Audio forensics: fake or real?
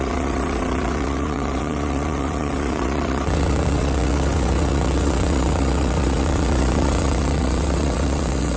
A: fake